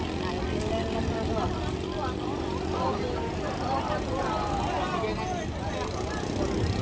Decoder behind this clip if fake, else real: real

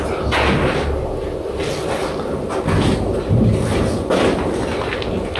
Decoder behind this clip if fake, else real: real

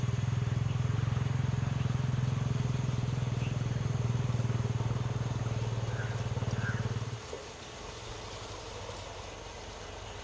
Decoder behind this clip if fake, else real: real